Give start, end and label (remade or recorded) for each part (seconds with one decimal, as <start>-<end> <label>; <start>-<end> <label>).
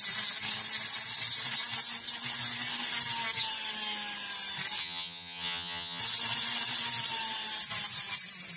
0.0-4.8 recorded; 4.8-6.0 remade; 6.0-8.6 recorded